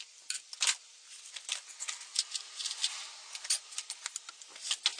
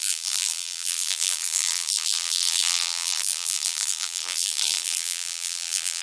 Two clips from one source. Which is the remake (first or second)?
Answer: second